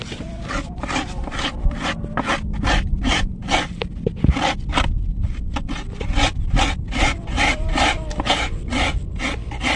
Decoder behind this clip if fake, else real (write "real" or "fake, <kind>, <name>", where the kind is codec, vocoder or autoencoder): real